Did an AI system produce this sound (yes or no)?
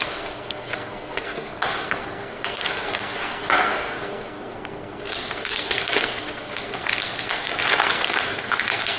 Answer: yes